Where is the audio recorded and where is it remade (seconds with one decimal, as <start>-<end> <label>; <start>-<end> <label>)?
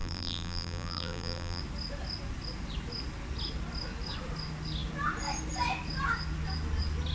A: 0.0-1.6 remade; 1.6-7.1 recorded